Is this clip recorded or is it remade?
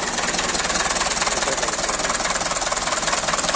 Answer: remade